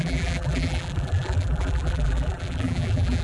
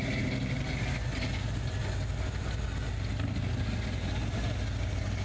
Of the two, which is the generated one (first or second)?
first